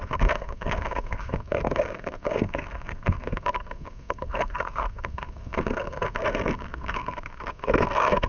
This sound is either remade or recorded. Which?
remade